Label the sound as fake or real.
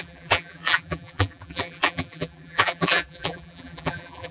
fake